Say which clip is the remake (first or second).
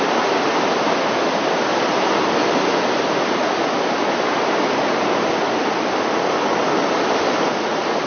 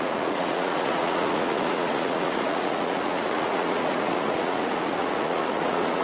second